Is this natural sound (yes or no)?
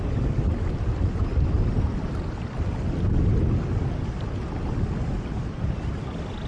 yes